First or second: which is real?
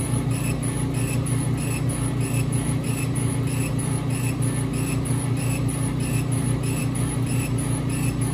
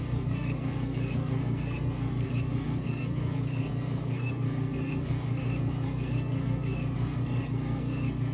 first